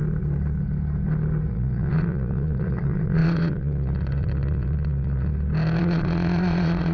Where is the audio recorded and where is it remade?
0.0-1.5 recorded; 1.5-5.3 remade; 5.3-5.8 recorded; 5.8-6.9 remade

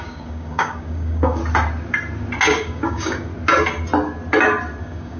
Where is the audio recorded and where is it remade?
0.0-1.4 remade; 1.4-2.6 recorded; 2.6-3.3 remade; 3.3-4.8 recorded; 4.8-5.2 remade

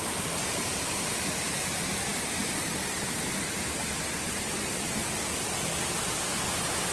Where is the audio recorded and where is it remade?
0.0-0.4 recorded; 0.4-1.0 remade; 1.0-6.9 recorded

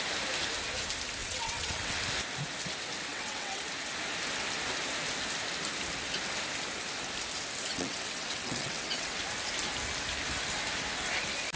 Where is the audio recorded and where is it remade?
0.0-1.2 recorded; 1.2-2.0 remade; 2.0-3.1 recorded; 3.1-3.6 remade; 3.6-7.7 recorded; 7.7-9.2 remade; 9.2-11.6 recorded

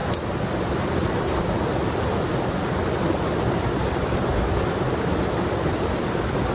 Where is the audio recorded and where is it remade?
0.0-6.5 recorded

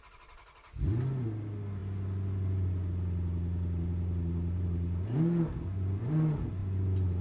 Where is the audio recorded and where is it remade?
0.0-7.2 recorded

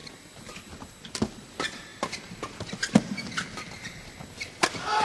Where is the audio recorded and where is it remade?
0.0-5.0 recorded